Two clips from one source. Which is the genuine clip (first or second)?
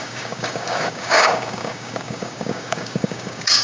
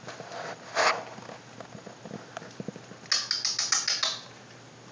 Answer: second